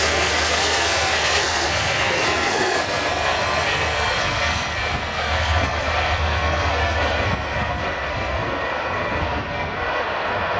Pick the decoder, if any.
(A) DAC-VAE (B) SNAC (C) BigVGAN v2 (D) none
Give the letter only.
B